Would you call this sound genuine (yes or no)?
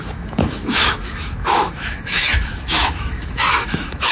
no